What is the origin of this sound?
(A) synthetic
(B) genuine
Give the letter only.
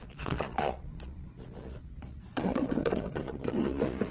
A